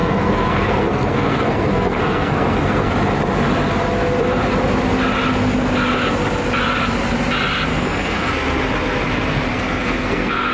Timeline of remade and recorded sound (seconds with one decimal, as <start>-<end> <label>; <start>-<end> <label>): 0.0-2.9 remade; 2.9-7.7 recorded; 7.7-8.3 remade; 8.3-9.5 recorded; 9.5-10.5 remade

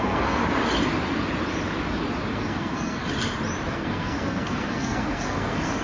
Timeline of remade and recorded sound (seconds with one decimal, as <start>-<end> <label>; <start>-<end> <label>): 0.0-0.4 remade; 0.4-2.3 recorded; 2.3-3.0 remade; 3.0-3.7 recorded; 3.7-5.8 remade

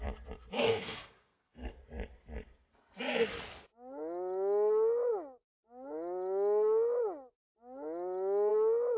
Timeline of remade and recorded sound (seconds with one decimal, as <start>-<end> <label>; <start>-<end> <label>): 0.0-0.6 recorded; 0.6-1.8 remade; 1.8-9.0 recorded

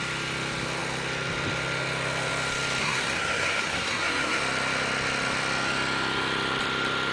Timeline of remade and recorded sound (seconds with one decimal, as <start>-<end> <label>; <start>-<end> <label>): 0.0-2.8 recorded; 2.8-4.4 remade; 4.4-7.1 recorded